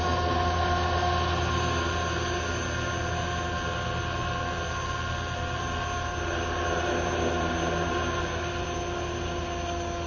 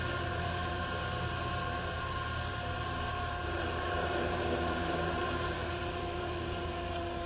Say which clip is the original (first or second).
first